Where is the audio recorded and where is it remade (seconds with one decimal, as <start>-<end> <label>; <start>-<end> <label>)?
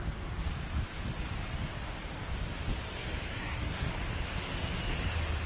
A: 0.0-3.3 recorded; 3.3-3.9 remade; 3.9-5.5 recorded